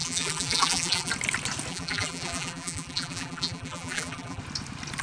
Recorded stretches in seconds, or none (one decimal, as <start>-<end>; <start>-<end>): 1.1-1.7; 4.4-5.0